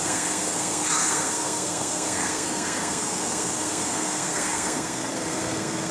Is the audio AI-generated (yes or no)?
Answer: yes